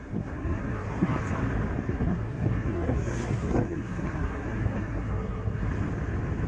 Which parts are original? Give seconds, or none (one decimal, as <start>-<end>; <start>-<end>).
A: 1.1-1.9; 5.7-6.5